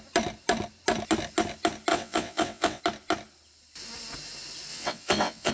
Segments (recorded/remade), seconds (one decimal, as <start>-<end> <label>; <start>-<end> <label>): 0.0-1.9 recorded; 1.9-2.8 remade; 2.8-4.7 recorded; 4.7-5.5 remade